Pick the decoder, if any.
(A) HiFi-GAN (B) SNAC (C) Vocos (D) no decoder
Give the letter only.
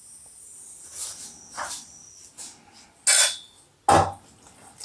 D